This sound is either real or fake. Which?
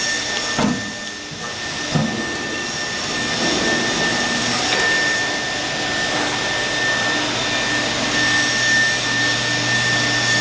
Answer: real